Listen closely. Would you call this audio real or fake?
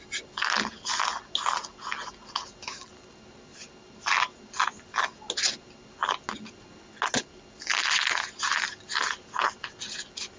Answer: real